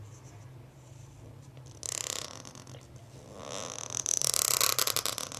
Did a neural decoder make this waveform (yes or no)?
no